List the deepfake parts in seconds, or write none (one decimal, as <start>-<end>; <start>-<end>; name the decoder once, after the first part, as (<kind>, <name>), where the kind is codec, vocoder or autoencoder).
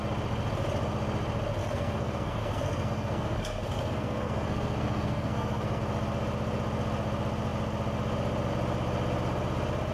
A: 1.6-5.8 (codec, SNAC)